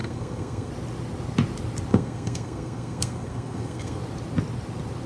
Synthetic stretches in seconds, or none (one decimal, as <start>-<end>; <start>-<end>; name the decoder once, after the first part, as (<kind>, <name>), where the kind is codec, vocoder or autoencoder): 0.0-0.7 (codec, SNAC); 1.9-4.0